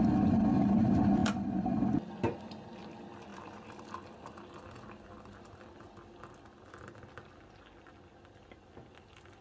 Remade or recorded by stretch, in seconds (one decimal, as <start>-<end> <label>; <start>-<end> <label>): 0.0-9.4 recorded